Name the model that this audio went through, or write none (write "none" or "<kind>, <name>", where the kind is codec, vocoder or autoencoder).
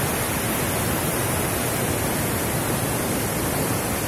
none